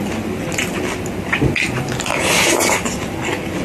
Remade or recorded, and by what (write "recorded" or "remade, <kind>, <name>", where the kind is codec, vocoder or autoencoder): recorded